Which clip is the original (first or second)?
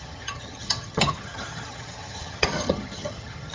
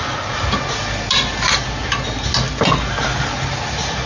second